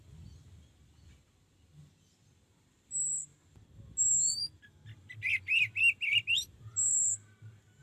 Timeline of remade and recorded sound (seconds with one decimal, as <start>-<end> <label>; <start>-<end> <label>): 0.0-7.8 recorded